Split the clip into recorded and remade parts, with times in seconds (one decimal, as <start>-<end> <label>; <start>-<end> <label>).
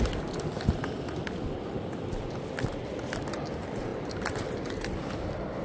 0.0-5.6 recorded